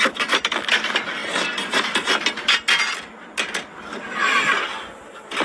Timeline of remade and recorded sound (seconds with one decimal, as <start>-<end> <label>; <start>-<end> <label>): 0.0-5.4 recorded